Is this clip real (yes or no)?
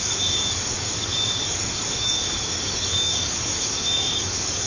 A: no